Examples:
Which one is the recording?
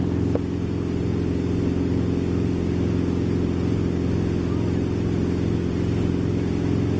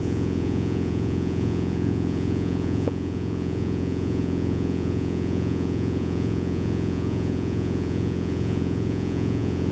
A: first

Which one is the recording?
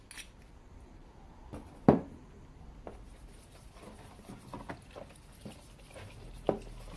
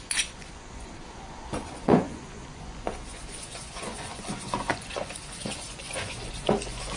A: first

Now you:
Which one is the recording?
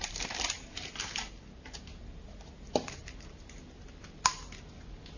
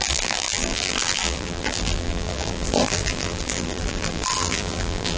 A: first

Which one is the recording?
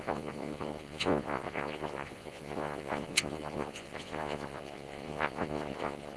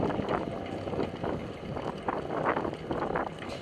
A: second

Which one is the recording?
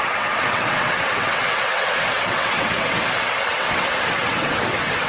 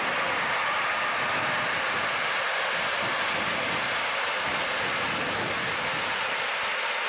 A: second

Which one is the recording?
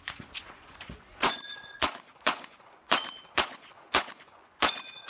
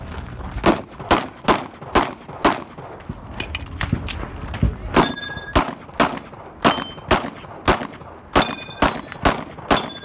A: second